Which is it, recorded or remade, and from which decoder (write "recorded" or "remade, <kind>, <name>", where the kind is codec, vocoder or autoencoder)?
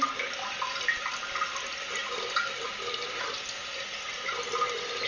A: recorded